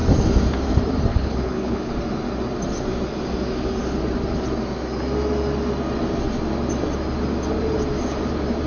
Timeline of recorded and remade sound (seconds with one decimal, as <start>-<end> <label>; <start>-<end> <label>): 0.0-1.1 recorded; 1.1-1.9 remade; 1.9-8.7 recorded